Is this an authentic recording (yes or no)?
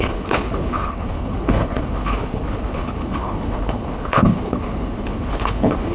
no